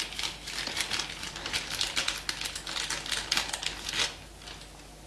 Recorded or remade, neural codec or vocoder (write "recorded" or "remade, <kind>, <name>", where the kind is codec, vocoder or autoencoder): recorded